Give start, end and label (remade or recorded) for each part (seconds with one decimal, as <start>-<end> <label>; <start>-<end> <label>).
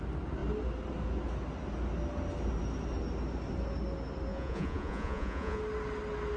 0.0-4.3 recorded; 4.3-5.6 remade; 5.6-6.4 recorded